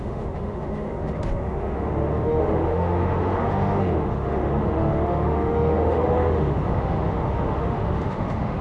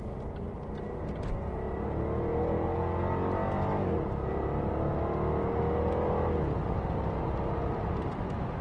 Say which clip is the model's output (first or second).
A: first